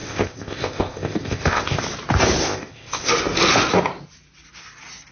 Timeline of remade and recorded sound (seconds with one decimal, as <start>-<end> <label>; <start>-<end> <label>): 0.0-1.8 remade; 1.8-2.4 recorded; 2.4-3.1 remade; 3.1-5.1 recorded